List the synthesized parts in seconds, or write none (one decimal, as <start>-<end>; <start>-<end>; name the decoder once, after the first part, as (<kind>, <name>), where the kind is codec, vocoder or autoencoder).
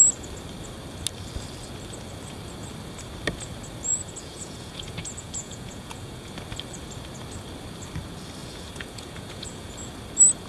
3.9-6.3 (vocoder, Vocos); 8.4-9.7